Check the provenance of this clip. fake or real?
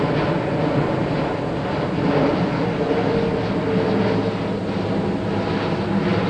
real